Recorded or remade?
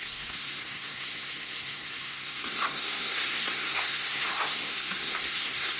remade